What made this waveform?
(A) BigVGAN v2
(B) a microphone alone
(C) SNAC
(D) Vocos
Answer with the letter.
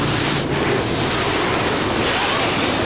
B